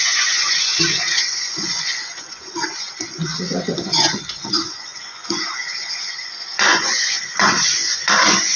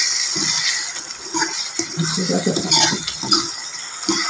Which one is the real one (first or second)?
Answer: second